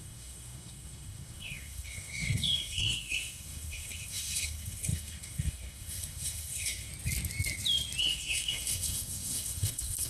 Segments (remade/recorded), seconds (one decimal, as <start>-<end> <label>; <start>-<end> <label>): 0.0-6.9 remade; 6.9-8.0 recorded; 8.0-10.1 remade